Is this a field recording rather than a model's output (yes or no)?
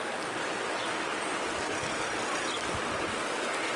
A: no